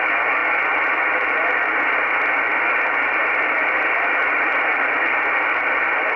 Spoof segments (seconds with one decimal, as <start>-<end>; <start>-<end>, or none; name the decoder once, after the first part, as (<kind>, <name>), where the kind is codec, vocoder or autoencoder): none